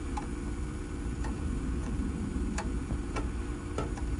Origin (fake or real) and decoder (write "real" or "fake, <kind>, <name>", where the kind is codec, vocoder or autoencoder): fake, vocoder, BigVGAN v2